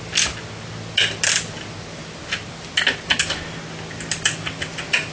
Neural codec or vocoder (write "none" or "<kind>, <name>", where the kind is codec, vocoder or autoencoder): none